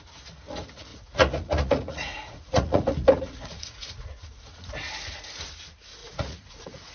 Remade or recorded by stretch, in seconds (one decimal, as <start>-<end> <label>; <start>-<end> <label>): 0.0-0.9 recorded; 0.9-4.7 remade; 4.7-6.0 recorded; 6.0-6.9 remade

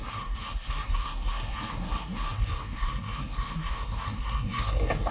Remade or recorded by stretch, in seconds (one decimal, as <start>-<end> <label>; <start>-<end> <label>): 0.0-5.1 remade

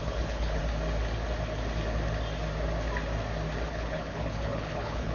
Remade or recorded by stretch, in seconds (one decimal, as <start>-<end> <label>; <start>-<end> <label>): 0.0-0.6 remade; 0.6-3.7 recorded; 3.7-5.1 remade

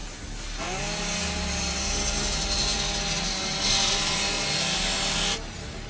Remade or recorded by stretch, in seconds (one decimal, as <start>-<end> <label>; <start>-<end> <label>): 0.0-5.9 recorded

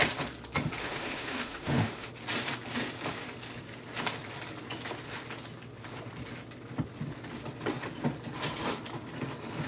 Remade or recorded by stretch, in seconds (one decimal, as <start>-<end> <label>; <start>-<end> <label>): 0.0-0.8 recorded; 0.8-2.1 remade; 2.1-9.7 recorded

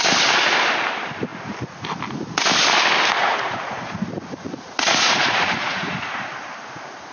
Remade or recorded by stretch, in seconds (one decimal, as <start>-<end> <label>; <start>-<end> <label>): 0.0-3.2 recorded; 3.2-6.3 remade; 6.3-7.1 recorded

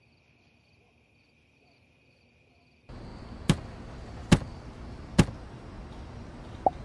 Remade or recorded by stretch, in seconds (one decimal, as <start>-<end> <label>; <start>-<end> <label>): 0.0-6.8 recorded